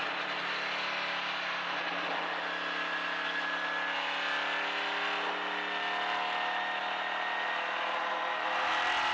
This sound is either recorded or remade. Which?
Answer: recorded